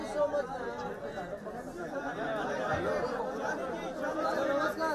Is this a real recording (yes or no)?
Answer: yes